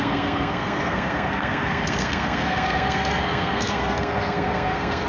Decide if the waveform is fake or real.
fake